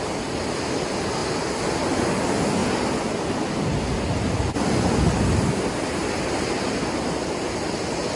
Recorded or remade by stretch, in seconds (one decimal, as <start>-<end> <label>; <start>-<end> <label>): 0.0-8.2 recorded